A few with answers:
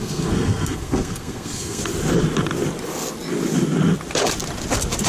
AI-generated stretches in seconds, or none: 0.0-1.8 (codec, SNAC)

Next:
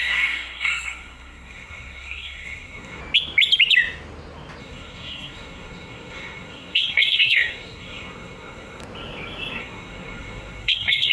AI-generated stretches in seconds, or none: 0.0-3.0 (codec, SNAC); 4.6-8.8; 9.6-11.1

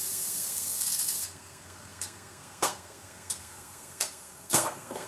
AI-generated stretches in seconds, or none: 0.0-5.1 (codec, SNAC)

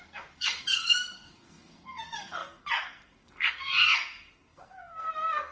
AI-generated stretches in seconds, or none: 0.0-5.5 (codec, SNAC)

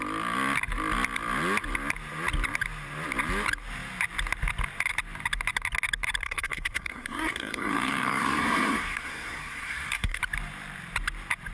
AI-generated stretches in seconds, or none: 6.2-10.2 (codec, SNAC)